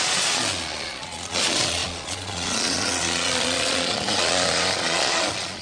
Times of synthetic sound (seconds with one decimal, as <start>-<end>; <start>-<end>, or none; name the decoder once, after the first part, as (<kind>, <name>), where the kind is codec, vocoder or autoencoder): 0.0-5.6 (vocoder, Vocos)